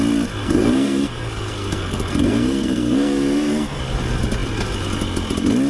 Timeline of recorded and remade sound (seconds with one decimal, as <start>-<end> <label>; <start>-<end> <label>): 0.0-0.4 recorded; 0.4-3.8 remade; 3.8-5.7 recorded